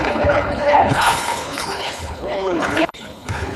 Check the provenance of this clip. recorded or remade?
remade